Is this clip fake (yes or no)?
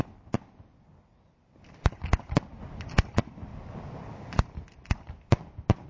yes